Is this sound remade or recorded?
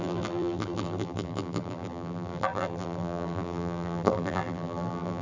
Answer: remade